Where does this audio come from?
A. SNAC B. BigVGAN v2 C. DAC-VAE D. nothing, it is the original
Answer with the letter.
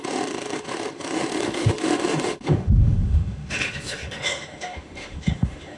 C